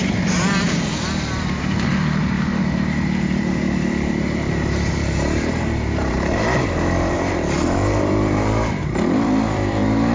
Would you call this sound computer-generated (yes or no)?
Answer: yes